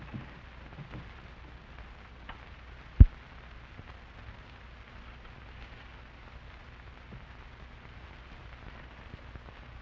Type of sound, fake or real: real